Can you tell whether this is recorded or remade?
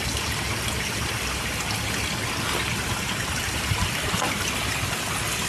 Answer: recorded